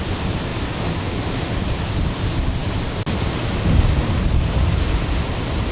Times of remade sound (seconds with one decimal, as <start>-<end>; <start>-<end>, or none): 0.0-0.5; 1.9-2.6; 3.3-5.7